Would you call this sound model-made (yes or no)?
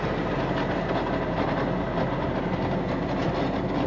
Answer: no